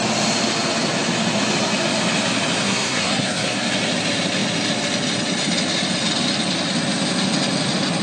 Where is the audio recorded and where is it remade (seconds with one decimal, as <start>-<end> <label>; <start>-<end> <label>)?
0.0-2.6 recorded; 2.6-3.7 remade; 3.7-8.0 recorded

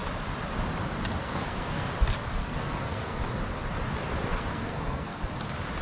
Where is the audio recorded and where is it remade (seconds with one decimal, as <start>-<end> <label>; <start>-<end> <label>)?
0.0-1.2 recorded; 1.2-1.9 remade; 1.9-2.4 recorded; 2.4-3.2 remade; 3.2-4.3 recorded; 4.3-5.2 remade; 5.2-5.8 recorded

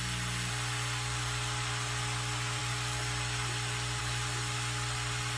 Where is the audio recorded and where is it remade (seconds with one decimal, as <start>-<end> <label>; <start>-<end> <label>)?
0.0-5.4 recorded